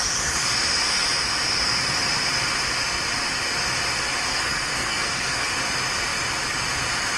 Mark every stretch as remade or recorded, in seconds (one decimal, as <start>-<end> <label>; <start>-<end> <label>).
0.0-4.3 recorded; 4.3-5.5 remade; 5.5-7.2 recorded